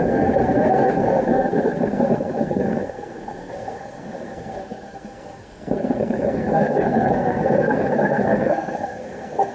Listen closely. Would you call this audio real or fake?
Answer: fake